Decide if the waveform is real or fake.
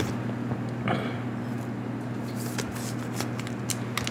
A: real